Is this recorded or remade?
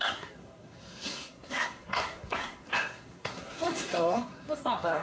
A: remade